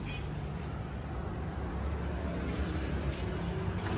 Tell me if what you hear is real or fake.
real